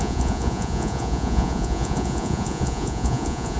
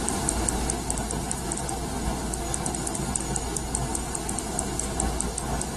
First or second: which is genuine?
second